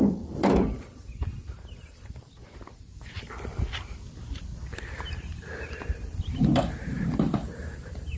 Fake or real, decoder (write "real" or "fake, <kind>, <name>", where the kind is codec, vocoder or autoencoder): real